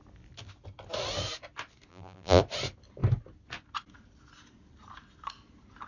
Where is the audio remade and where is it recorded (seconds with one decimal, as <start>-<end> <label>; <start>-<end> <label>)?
0.0-1.9 recorded; 1.9-2.4 remade; 2.4-5.9 recorded